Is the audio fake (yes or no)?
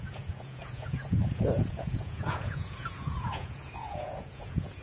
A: yes